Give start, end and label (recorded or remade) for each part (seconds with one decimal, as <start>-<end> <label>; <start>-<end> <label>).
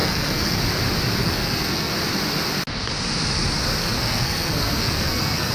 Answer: 0.0-0.6 remade; 0.6-1.2 recorded; 1.2-1.9 remade; 1.9-3.8 recorded; 3.8-5.5 remade